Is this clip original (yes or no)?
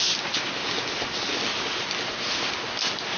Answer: yes